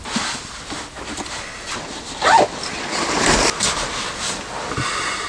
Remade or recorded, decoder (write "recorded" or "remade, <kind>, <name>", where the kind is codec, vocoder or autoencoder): recorded